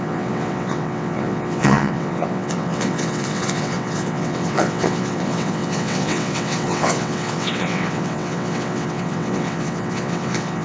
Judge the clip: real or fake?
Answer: fake